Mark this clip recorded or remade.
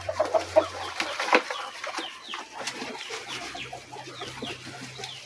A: remade